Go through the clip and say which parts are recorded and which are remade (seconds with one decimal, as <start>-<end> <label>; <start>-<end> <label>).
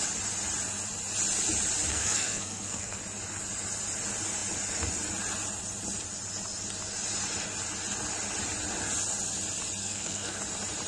0.0-1.9 recorded; 1.9-3.0 remade; 3.0-9.8 recorded; 9.8-10.4 remade; 10.4-10.9 recorded